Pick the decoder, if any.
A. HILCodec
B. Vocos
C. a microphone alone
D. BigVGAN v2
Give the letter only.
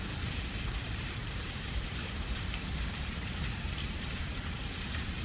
D